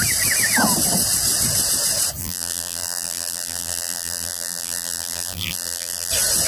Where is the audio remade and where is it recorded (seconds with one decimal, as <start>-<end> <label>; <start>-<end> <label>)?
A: 0.0-2.2 recorded; 2.2-6.1 remade; 6.1-6.5 recorded